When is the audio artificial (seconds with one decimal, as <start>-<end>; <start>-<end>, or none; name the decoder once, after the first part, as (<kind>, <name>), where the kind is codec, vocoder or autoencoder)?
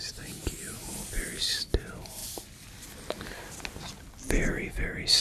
none